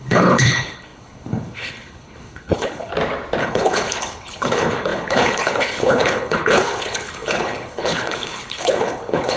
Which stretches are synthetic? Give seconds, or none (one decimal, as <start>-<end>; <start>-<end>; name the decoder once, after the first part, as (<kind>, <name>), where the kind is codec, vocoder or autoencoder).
0.0-2.9 (codec, HILCodec); 3.4-9.4